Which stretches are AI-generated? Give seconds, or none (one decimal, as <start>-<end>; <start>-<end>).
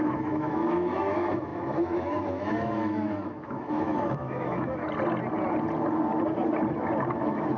0.0-4.8; 7.1-7.6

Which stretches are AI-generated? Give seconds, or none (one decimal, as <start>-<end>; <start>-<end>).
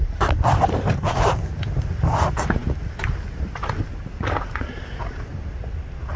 none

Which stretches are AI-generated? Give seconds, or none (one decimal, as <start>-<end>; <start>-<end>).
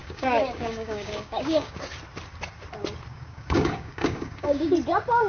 0.0-1.8; 3.1-4.7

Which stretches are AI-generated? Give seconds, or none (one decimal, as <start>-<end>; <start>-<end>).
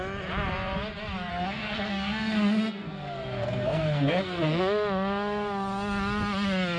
1.3-4.6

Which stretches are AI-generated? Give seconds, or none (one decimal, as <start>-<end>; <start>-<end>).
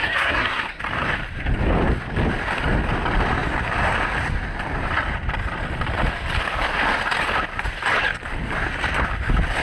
0.0-0.8